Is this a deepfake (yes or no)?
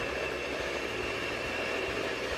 no